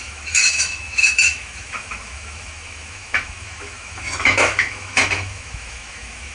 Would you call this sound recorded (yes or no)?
no